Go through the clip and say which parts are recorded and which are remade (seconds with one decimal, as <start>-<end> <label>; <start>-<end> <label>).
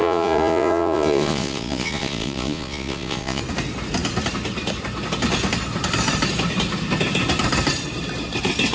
0.0-3.4 remade; 3.4-8.7 recorded